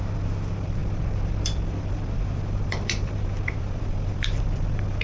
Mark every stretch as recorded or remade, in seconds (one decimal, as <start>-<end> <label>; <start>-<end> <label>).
0.0-5.0 remade